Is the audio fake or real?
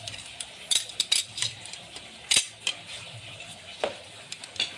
fake